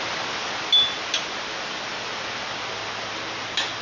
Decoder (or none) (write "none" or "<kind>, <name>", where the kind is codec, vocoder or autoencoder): none